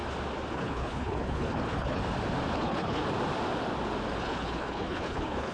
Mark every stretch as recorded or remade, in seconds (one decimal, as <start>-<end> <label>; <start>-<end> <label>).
0.0-0.5 recorded; 0.5-2.0 remade; 2.0-2.5 recorded; 2.5-3.0 remade; 3.0-4.2 recorded; 4.2-5.5 remade